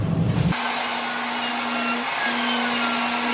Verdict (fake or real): real